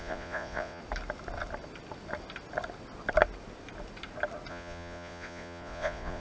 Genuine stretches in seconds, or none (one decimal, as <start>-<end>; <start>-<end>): 0.8-4.5